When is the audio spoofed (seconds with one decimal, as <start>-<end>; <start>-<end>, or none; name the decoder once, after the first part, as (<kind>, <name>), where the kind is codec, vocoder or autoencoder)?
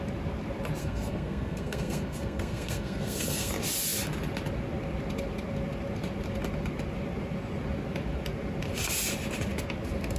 0.8-3.5 (codec, SNAC)